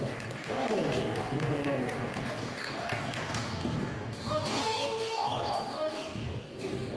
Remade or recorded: remade